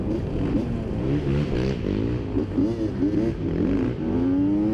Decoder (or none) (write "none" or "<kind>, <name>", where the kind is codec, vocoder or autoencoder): none